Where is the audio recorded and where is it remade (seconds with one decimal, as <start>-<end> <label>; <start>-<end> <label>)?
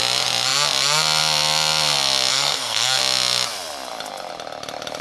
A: 0.0-2.3 recorded; 2.3-3.0 remade; 3.0-5.0 recorded